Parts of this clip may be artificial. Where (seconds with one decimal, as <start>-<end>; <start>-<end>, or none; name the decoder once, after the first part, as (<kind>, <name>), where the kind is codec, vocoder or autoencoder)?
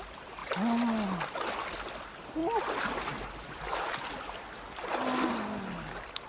0.0-0.4 (vocoder, BigVGAN v2); 1.7-2.4; 3.3-3.7